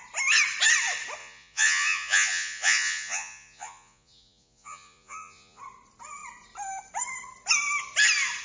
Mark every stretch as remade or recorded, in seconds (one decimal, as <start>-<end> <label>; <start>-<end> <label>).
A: 0.0-1.2 recorded; 1.2-5.6 remade; 5.6-8.4 recorded